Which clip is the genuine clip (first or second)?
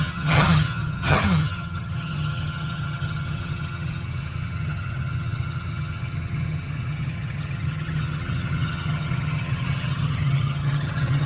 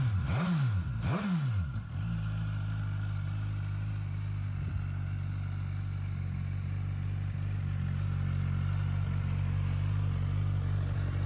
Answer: second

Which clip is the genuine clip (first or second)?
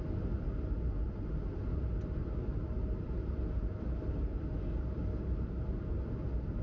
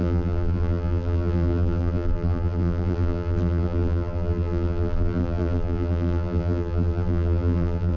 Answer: first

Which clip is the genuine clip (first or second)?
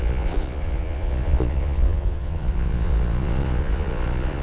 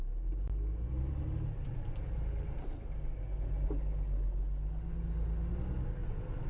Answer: second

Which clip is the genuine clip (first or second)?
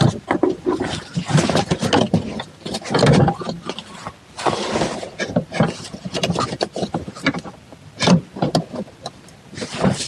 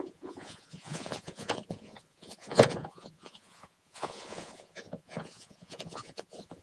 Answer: first